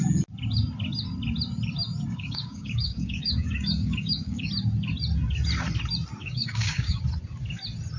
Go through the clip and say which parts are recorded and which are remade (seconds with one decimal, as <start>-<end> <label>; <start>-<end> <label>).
0.0-2.1 recorded; 2.1-4.5 remade; 4.5-6.2 recorded; 6.2-7.0 remade; 7.0-8.0 recorded